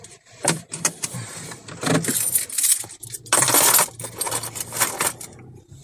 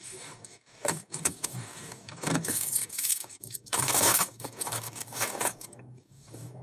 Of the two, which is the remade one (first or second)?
second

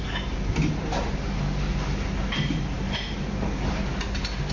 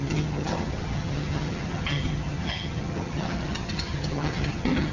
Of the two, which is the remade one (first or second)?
second